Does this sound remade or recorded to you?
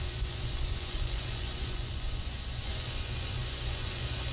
remade